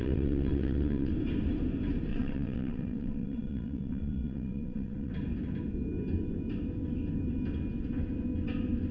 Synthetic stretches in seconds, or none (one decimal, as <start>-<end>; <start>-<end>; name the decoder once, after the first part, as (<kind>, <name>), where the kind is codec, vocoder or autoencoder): 0.0-1.1 (vocoder, WaveNeXt); 2.1-5.1